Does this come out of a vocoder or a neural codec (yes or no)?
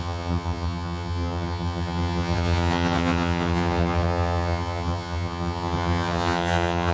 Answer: yes